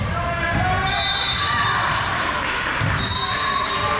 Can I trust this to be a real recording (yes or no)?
yes